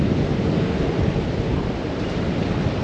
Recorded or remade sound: recorded